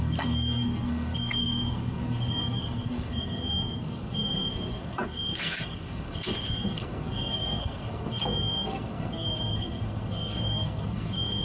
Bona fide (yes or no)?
no